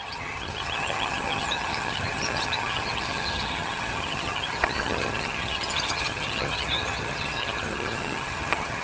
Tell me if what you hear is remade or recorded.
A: remade